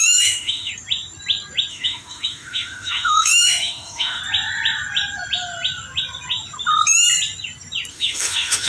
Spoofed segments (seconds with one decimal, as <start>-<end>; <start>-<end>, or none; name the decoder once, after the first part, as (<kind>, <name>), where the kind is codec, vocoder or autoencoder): 0.0-0.7 (autoencoder, DAC-VAE); 1.7-4.2; 7.9-8.7